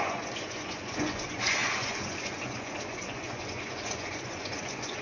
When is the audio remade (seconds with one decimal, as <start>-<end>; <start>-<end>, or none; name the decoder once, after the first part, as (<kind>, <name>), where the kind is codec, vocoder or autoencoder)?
0.0-5.0 (vocoder, Vocos)